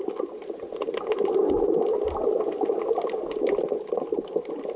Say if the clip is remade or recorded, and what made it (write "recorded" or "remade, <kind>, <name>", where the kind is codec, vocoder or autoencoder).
recorded